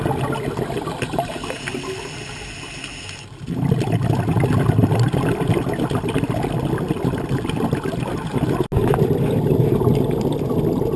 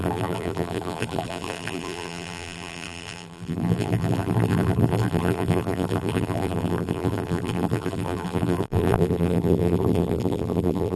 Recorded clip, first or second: first